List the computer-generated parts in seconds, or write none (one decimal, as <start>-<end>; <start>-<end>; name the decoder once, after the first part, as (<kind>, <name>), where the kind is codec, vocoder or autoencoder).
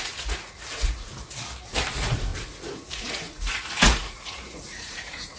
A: 0.0-1.1 (vocoder, Vocos); 1.9-5.4